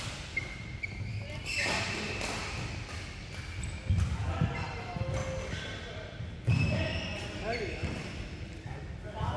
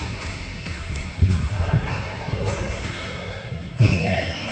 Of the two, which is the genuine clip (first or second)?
first